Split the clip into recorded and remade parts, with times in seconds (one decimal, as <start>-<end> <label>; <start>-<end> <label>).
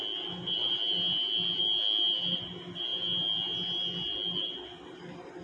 0.0-5.4 recorded